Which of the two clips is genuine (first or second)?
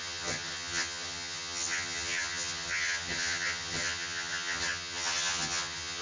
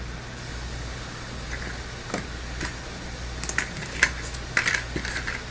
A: second